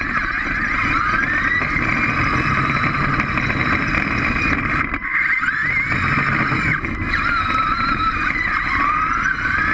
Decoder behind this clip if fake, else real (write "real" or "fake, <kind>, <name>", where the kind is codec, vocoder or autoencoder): real